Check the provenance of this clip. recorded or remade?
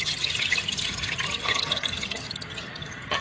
remade